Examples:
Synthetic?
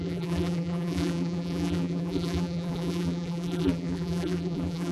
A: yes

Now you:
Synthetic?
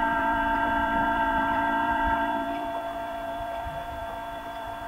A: yes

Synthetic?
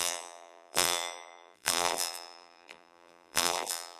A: yes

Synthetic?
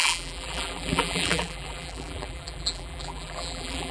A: yes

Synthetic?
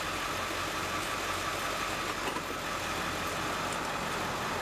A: no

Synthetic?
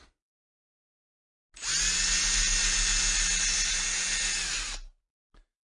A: no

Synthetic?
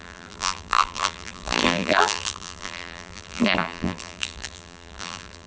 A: yes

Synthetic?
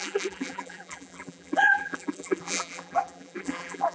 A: yes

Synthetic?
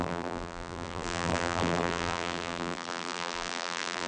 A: yes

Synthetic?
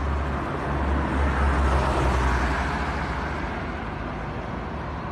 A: no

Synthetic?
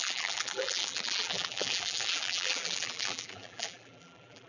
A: yes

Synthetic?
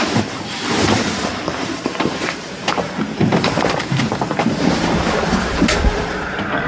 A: yes